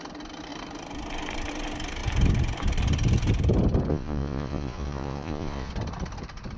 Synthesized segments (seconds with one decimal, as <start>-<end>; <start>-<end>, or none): 3.9-5.7